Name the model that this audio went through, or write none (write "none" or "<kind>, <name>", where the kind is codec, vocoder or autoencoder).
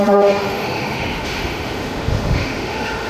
autoencoder, DAC-VAE